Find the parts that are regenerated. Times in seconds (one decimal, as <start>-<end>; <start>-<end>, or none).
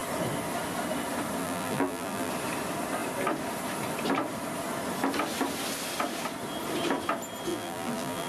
1.4-2.3; 7.5-8.3